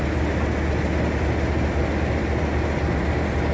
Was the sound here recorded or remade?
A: recorded